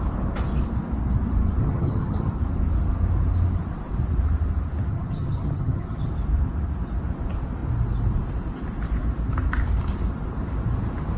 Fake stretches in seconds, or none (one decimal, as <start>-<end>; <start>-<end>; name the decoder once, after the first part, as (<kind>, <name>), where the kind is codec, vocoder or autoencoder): 1.6-2.3 (vocoder, HiFi-GAN); 4.9-6.1